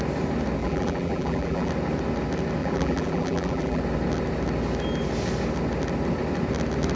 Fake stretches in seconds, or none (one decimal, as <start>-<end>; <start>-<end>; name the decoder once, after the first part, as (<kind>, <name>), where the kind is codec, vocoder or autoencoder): 0.6-1.7 (vocoder, BigVGAN v2); 2.6-3.8